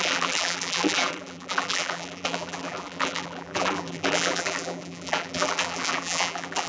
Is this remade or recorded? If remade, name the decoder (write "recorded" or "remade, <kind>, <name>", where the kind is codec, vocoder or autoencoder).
remade, vocoder, BigVGAN v2